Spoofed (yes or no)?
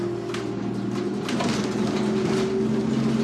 no